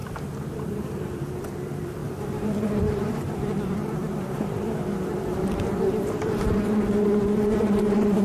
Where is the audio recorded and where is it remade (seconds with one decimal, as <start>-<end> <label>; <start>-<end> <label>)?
0.0-8.2 remade